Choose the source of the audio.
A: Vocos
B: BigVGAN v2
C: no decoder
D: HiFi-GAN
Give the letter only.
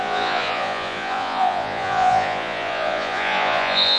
A